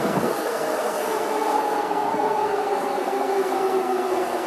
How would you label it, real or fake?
fake